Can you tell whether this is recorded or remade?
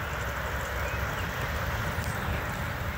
recorded